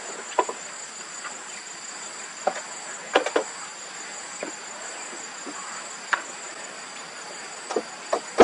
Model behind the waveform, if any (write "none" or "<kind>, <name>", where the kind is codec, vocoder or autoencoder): none